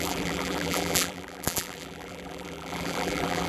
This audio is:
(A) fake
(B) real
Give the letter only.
A